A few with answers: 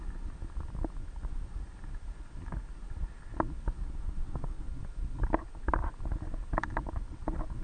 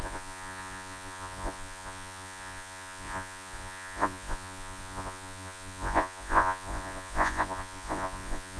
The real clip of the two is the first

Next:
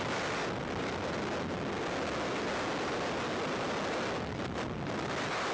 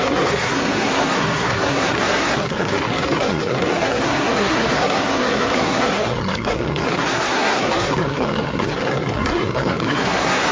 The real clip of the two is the first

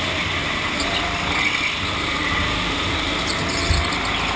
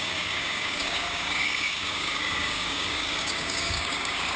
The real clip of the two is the first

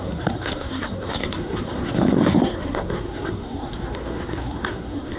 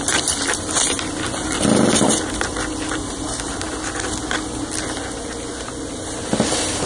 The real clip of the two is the second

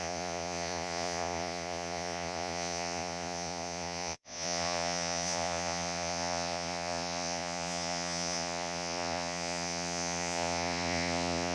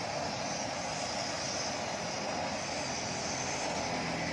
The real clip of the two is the second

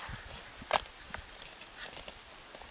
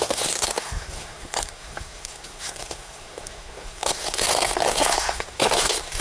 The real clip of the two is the first